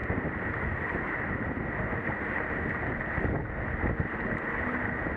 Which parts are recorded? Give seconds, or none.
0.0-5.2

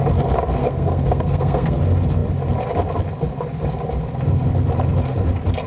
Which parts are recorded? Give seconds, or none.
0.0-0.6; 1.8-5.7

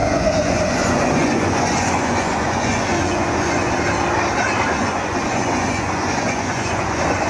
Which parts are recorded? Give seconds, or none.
3.7-4.8

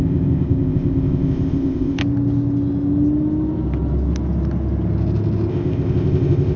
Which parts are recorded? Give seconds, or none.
2.0-5.5